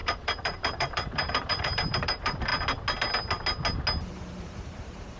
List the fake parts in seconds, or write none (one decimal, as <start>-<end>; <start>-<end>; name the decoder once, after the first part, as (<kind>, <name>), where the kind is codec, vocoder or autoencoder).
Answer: 0.0-2.5 (vocoder, BigVGAN v2); 4.4-5.2